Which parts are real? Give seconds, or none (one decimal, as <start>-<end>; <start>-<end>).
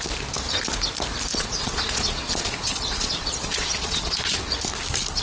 0.0-1.3; 4.4-5.2